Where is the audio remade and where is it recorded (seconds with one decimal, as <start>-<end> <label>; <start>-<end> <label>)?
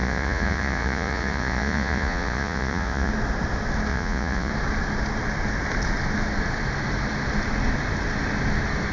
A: 0.0-3.1 remade; 3.1-3.9 recorded; 3.9-4.5 remade; 4.5-8.9 recorded